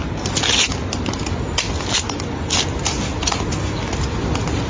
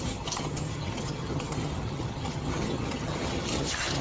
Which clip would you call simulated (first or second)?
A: second